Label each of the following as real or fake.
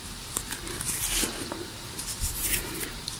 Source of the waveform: fake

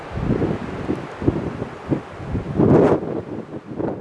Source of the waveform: real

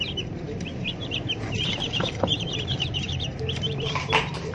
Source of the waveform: fake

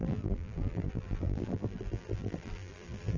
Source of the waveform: fake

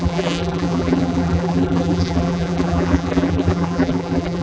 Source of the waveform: fake